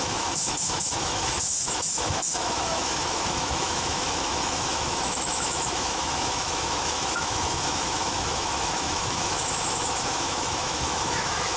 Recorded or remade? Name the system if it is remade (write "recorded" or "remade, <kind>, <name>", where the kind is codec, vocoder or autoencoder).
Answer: remade, autoencoder, DAC-VAE